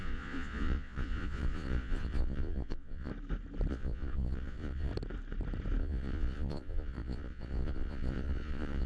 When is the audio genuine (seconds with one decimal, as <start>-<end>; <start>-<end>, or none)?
3.1-3.7; 4.9-5.8